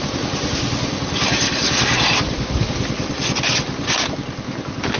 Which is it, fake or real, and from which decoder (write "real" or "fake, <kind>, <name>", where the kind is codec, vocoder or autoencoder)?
real